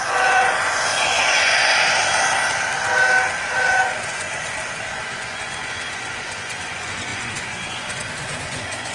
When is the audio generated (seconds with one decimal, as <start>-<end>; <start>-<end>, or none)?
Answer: 0.0-1.7; 3.4-8.9

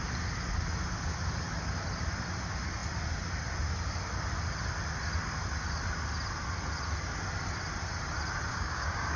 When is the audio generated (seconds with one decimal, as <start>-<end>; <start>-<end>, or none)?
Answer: 8.5-9.2

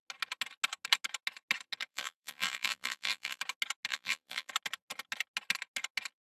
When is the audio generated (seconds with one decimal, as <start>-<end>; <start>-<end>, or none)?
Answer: 1.9-3.4; 3.9-4.5

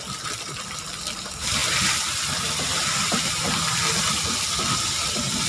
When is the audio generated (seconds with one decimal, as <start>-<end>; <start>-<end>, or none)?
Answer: 0.0-5.5

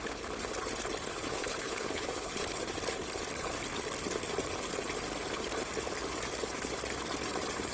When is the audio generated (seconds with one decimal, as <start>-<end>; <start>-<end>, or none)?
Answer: 1.2-2.6

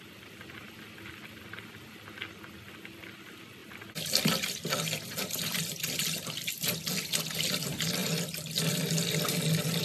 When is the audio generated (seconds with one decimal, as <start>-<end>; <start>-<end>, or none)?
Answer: none

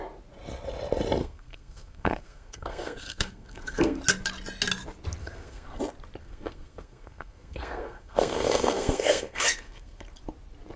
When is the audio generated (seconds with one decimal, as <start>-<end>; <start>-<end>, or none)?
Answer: 1.2-4.0; 5.2-5.8; 6.2-10.0

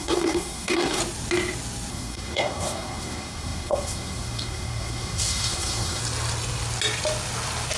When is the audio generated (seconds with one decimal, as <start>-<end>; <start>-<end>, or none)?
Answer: 0.0-1.0; 1.9-6.0